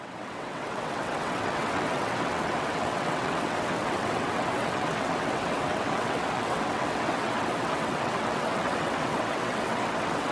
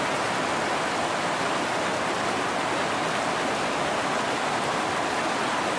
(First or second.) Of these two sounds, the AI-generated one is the first